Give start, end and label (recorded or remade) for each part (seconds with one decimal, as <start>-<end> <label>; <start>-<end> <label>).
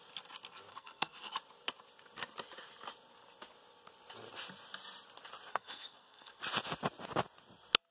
0.0-0.7 recorded; 0.7-1.3 remade; 1.3-5.5 recorded; 5.5-6.4 remade; 6.4-7.9 recorded